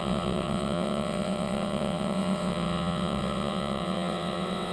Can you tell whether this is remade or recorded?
remade